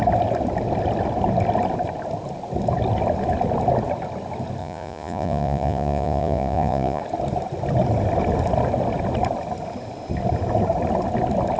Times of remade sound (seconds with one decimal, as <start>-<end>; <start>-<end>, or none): 4.6-7.0